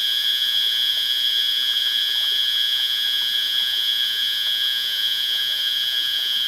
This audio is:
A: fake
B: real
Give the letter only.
A